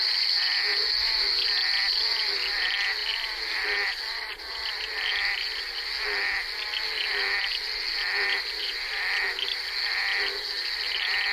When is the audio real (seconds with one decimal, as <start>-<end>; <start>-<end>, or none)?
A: 0.0-11.3